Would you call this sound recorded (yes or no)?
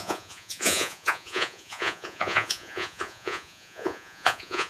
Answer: no